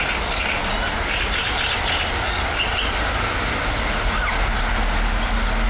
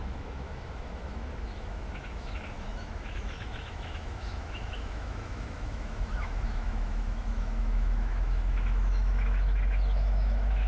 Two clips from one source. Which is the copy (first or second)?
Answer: second